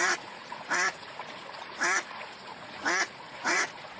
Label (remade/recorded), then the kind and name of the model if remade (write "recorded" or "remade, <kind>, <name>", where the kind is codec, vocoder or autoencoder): remade, vocoder, Vocos